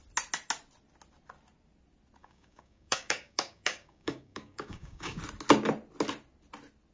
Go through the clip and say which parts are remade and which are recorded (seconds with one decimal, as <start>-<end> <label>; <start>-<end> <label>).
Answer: 0.0-2.2 recorded; 2.2-5.2 remade; 5.2-6.9 recorded